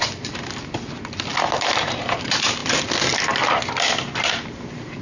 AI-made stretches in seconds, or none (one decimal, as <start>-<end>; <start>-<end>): 0.0-1.3; 1.8-2.6; 4.3-5.0